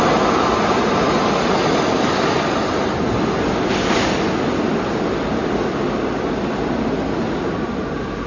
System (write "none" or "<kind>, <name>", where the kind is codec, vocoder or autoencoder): none